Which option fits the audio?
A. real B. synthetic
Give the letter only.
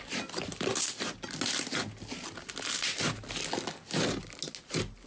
A